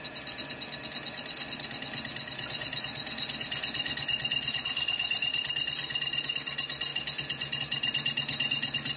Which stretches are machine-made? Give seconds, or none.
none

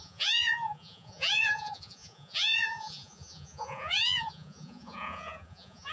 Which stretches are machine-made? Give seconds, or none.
0.0-5.9

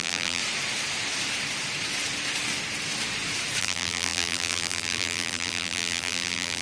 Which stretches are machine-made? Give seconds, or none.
0.0-0.4; 3.6-6.6

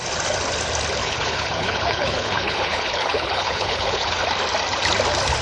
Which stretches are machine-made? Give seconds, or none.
1.0-4.2

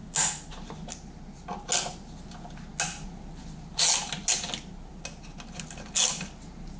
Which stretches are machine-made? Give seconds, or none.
none

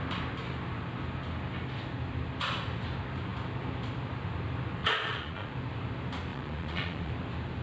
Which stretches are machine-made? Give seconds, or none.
4.8-5.5; 6.3-7.1

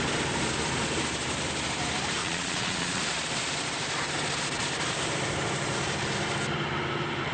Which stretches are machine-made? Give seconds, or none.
2.2-3.0

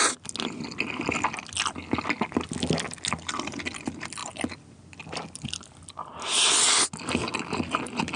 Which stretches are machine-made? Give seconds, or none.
none